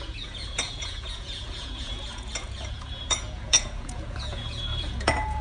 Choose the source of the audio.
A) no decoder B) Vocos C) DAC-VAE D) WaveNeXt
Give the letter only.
B